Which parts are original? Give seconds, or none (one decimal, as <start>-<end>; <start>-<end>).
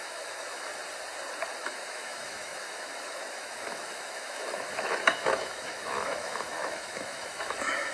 0.7-1.6